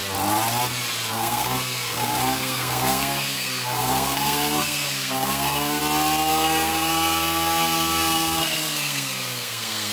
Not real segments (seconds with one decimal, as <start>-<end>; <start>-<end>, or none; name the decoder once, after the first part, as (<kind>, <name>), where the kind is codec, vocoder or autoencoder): 1.1-5.8 (codec, SNAC); 6.3-9.9